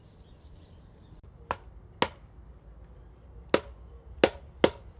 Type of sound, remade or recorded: recorded